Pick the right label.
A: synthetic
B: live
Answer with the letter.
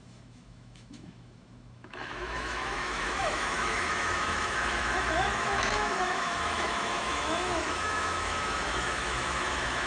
A